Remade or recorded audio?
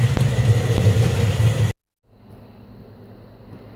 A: recorded